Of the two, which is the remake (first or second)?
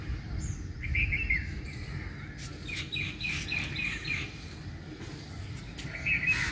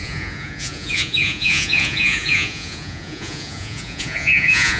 second